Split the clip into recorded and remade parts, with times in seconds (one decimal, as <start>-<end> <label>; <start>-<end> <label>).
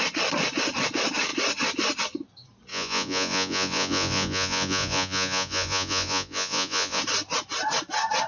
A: 0.0-2.7 recorded; 2.7-7.0 remade; 7.0-8.3 recorded